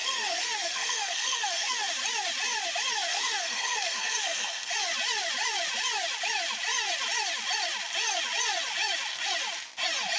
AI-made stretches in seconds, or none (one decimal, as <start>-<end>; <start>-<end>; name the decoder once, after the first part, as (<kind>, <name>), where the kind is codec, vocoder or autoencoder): 0.0-1.9 (codec, SNAC); 3.1-4.7

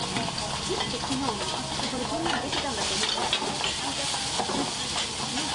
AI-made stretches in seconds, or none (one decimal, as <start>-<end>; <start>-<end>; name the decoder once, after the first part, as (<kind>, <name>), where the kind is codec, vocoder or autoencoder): none

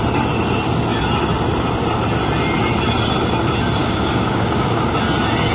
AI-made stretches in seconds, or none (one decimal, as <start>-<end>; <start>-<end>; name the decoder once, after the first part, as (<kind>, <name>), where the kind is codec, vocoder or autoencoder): 3.8-4.8 (codec, DAC)

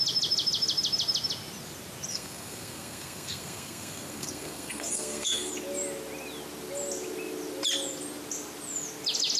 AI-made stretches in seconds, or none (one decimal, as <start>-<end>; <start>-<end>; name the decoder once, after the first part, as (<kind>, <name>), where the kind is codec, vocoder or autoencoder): 2.1-5.5 (codec, SNAC)